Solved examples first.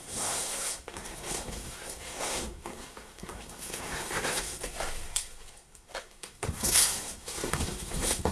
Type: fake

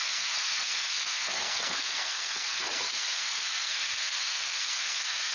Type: fake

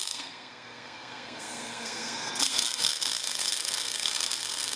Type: fake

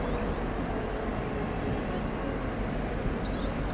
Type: real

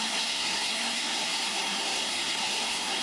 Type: fake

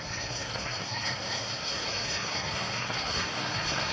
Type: fake